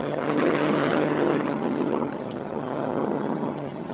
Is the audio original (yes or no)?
no